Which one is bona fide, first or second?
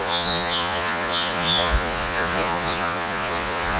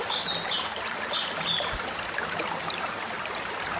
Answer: second